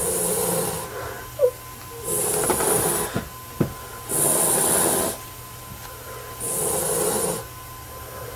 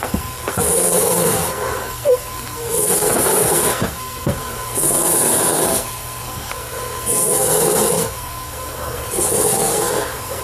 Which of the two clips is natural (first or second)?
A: first